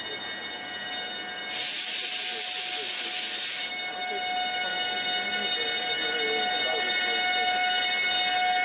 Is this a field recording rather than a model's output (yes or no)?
yes